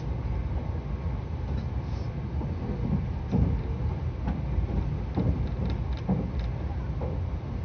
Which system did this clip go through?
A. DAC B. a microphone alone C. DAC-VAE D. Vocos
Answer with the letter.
B